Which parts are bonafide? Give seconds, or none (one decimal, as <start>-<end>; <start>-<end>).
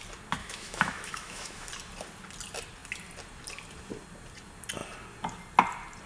0.0-0.4; 1.7-6.1